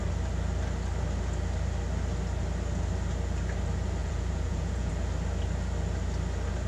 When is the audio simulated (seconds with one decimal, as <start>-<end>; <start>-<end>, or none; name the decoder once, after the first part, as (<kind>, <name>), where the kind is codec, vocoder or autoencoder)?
4.0-4.9 (vocoder, Vocos)